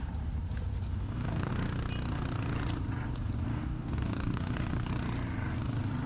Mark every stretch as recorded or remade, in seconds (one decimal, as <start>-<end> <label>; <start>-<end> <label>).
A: 0.0-0.9 recorded; 0.9-1.5 remade; 1.5-3.5 recorded; 3.5-4.9 remade; 4.9-6.1 recorded